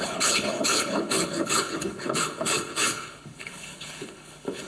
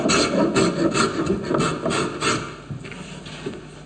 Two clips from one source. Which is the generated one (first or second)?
first